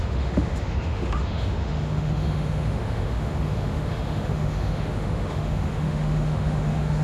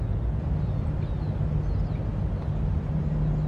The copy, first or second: first